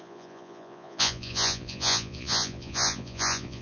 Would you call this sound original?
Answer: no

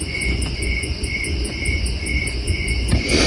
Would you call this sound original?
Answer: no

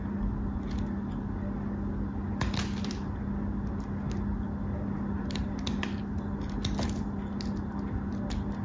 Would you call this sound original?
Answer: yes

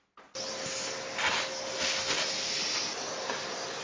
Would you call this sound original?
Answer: yes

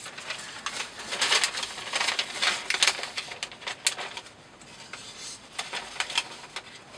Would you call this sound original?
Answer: yes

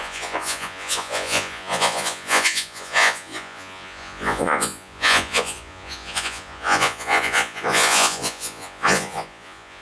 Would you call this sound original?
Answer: no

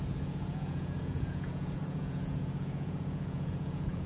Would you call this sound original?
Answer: no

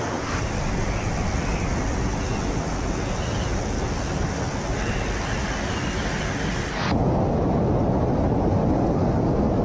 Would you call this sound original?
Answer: yes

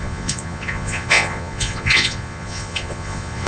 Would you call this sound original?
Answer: no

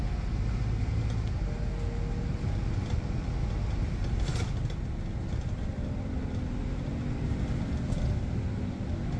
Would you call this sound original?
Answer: yes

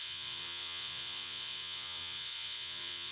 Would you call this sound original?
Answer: no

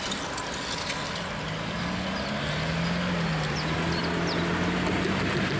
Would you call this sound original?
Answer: yes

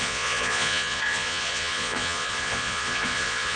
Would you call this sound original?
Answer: no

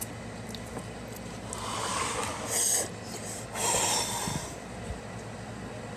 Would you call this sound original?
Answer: yes